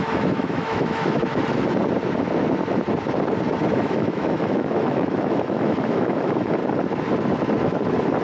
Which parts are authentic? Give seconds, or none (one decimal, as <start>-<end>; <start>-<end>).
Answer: 1.2-3.7; 6.6-8.2